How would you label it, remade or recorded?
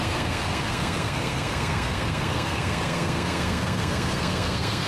remade